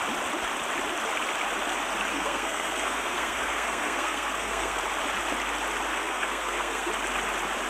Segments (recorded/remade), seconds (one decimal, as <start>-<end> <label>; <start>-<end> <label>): 0.0-2.1 recorded; 2.1-4.8 remade; 4.8-5.9 recorded; 5.9-6.9 remade; 6.9-7.7 recorded